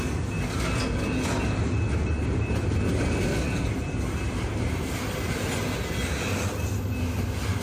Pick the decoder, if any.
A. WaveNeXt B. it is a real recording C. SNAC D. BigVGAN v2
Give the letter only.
B